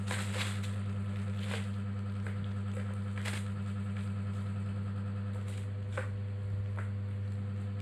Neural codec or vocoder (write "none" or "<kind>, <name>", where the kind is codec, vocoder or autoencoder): none